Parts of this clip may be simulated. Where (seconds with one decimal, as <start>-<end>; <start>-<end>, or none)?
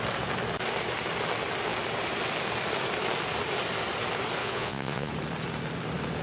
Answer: 4.4-5.1